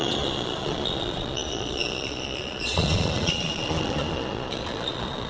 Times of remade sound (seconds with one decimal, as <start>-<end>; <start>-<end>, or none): 0.0-5.3